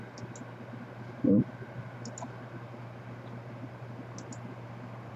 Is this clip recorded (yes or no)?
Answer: yes